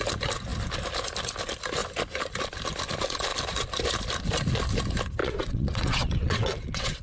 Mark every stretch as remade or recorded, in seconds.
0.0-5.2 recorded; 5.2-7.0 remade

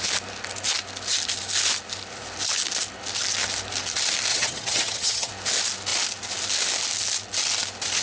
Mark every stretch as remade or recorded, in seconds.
0.0-4.3 recorded; 4.3-5.3 remade; 5.3-8.0 recorded

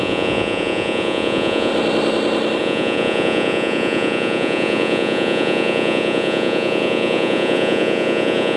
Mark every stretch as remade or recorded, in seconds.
0.0-1.7 remade; 1.7-2.6 recorded; 2.6-8.6 remade

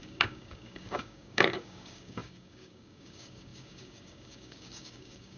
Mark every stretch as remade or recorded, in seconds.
0.0-5.4 remade